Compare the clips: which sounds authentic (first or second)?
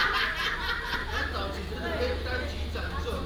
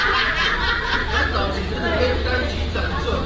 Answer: first